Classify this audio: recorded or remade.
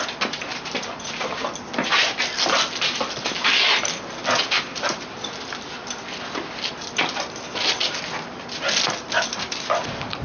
recorded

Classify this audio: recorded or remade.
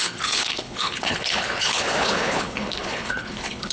remade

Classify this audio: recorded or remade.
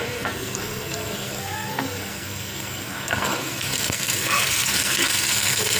remade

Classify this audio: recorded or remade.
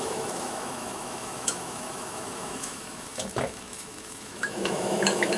remade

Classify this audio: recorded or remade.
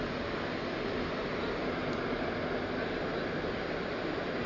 recorded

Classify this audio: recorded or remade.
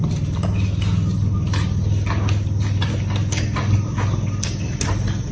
recorded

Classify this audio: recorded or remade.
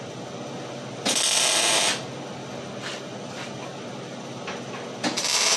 recorded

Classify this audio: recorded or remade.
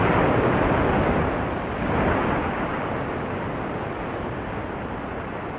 recorded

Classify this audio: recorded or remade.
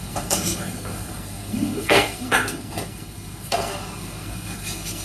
remade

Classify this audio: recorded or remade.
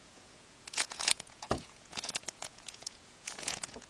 remade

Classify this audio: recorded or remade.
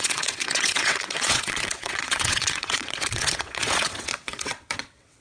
remade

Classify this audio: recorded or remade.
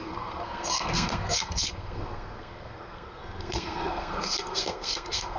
remade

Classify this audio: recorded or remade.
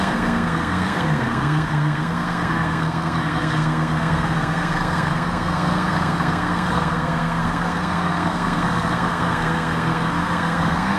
remade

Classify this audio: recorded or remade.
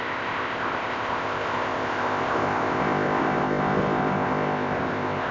remade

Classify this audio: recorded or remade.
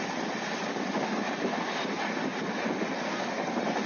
recorded